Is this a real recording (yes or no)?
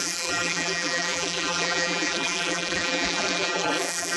no